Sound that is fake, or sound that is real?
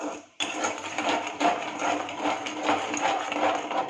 real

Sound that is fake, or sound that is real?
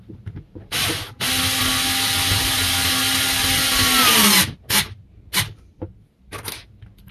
real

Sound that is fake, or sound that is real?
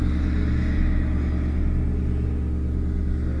real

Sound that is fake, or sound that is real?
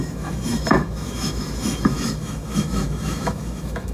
fake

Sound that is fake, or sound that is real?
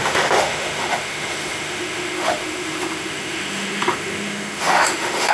fake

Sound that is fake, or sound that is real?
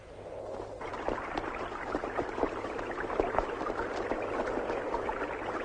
real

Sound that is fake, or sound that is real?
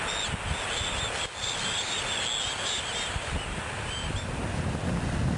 real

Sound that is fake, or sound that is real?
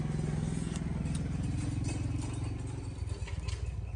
real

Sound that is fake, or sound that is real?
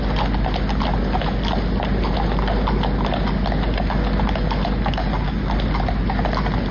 real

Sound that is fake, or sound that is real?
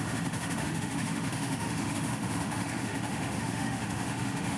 fake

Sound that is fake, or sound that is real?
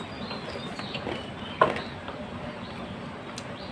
real